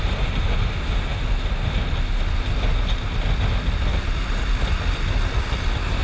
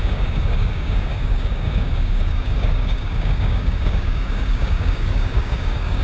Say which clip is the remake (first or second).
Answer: second